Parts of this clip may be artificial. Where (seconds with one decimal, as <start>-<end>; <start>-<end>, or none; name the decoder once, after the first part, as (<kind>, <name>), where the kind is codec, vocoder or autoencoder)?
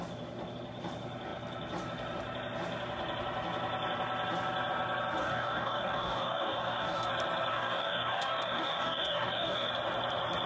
5.2-7.1 (codec, DAC); 7.5-9.7